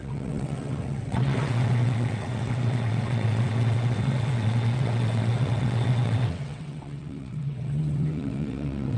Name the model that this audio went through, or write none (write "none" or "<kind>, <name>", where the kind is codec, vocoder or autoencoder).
vocoder, WaveNeXt